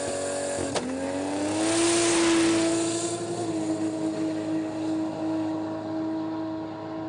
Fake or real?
real